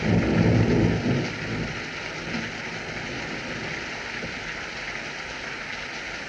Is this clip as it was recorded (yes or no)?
yes